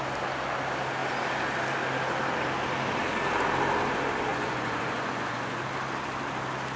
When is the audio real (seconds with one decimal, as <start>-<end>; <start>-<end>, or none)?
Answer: 0.0-4.3; 5.6-6.8